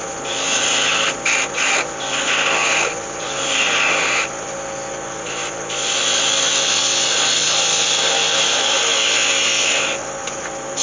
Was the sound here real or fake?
real